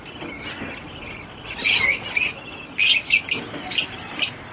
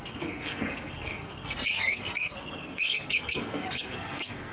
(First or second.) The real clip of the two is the first